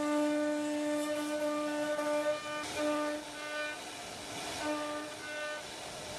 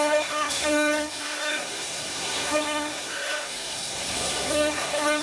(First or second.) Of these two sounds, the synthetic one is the second